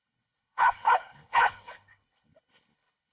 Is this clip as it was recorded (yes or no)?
no